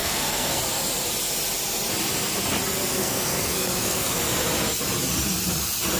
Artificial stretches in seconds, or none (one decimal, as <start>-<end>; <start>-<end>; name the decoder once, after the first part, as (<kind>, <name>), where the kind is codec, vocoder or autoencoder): 0.0-0.6 (codec, SNAC); 2.9-4.2